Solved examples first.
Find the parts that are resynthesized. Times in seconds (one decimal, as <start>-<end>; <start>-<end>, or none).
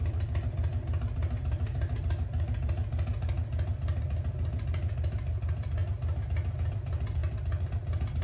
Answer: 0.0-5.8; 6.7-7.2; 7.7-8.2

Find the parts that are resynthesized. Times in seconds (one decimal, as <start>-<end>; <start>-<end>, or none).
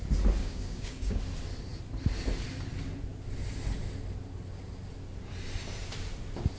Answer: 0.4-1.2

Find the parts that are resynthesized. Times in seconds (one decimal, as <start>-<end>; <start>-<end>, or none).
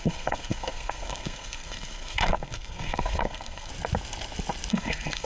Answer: 0.0-3.7; 4.7-5.3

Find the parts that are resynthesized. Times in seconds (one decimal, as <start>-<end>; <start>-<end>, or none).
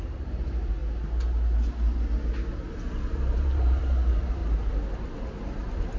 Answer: 0.0-0.8; 3.1-4.4